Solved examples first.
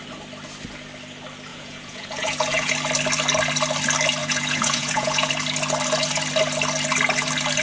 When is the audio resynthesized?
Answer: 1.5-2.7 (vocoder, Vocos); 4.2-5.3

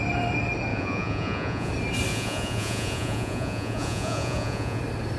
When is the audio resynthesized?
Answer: 0.7-1.7 (vocoder, Vocos); 2.1-4.8

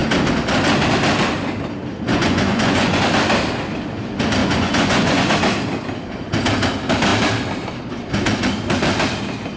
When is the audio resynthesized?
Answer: 2.1-3.0 (vocoder, Vocos); 4.4-5.3